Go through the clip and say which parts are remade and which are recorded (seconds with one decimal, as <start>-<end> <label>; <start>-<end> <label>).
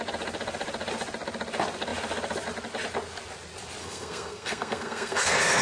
0.0-3.8 recorded; 3.8-5.6 remade